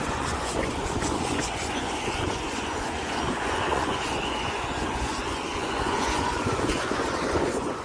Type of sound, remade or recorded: remade